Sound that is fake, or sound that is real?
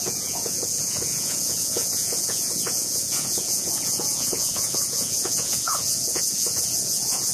fake